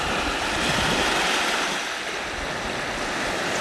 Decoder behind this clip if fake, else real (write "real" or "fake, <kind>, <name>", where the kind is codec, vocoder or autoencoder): real